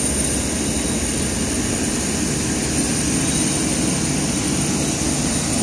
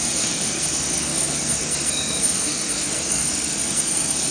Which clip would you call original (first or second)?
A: first